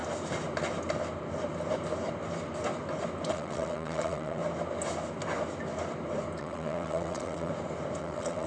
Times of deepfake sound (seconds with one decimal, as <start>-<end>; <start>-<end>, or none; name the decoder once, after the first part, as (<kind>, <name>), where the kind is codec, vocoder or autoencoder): 3.3-4.4 (vocoder, WaveNeXt); 6.4-7.5; 8.0-8.5